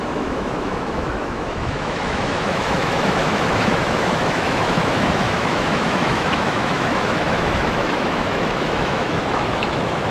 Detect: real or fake fake